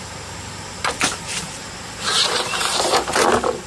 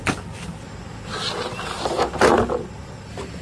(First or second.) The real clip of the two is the second